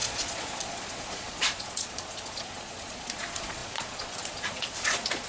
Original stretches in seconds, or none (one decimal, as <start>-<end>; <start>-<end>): none